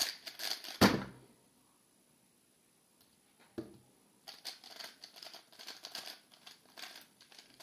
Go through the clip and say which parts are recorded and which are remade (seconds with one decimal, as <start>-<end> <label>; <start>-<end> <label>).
0.0-7.6 recorded